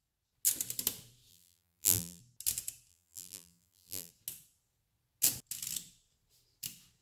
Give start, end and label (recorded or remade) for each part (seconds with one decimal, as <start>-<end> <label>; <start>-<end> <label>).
0.0-1.3 recorded; 1.3-2.2 remade; 2.2-2.9 recorded; 2.9-4.1 remade; 4.1-7.0 recorded